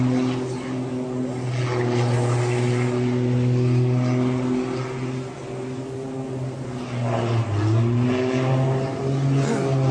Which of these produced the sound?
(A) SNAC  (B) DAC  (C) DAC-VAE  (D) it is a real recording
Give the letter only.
D